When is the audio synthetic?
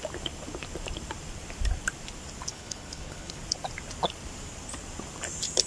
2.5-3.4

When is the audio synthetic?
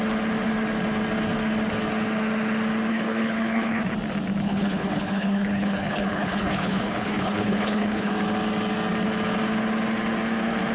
2.9-3.8; 4.4-8.1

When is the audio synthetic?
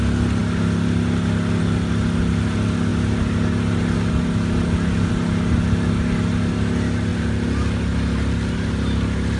none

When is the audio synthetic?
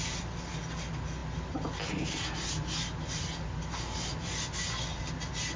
none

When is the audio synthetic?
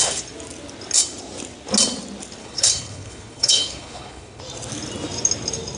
2.4-4.4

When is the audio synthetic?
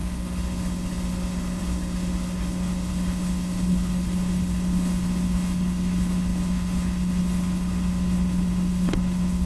0.0-9.4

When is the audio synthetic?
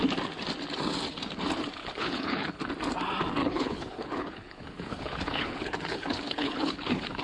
1.8-2.6; 3.4-7.2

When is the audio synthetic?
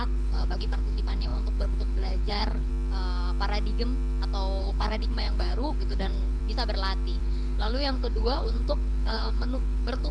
0.0-2.7; 4.6-6.4; 7.2-10.1